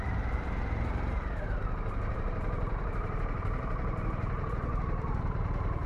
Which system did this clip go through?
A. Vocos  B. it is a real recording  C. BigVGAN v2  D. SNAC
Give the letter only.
C